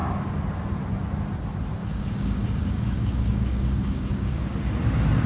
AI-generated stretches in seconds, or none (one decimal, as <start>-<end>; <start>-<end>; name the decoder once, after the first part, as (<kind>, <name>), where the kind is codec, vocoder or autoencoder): 1.8-4.5 (codec, DAC)